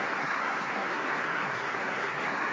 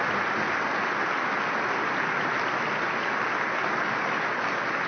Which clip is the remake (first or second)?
first